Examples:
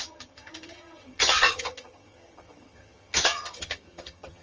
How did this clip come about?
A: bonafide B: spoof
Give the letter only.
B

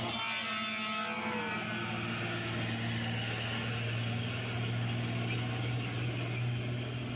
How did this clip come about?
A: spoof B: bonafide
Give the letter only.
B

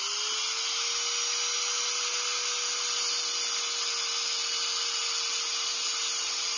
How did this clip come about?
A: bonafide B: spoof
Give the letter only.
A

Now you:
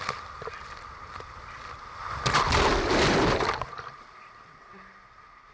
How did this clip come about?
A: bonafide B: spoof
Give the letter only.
B